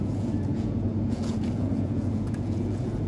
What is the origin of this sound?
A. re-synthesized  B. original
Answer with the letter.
A